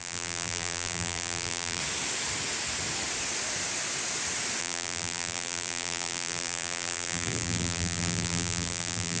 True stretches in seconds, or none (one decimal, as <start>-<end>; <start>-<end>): 1.8-4.6